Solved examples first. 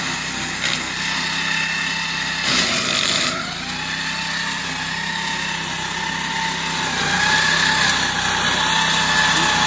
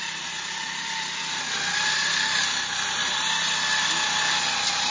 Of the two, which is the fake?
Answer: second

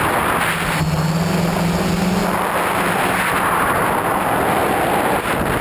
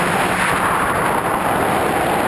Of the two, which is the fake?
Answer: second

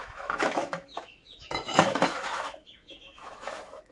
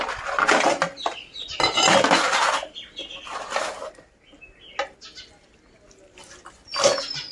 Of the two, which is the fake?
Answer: first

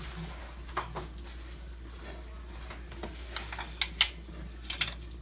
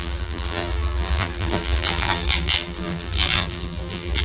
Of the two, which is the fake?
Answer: second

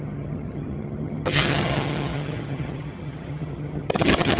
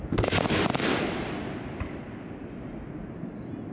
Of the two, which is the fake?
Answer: first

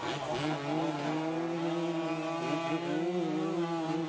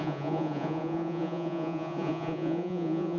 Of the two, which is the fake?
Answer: second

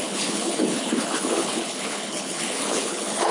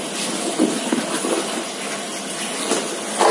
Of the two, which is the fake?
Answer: first